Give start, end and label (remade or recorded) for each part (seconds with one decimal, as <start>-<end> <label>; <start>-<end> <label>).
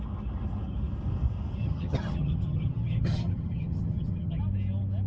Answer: 0.0-1.6 recorded; 1.6-4.4 remade; 4.4-5.1 recorded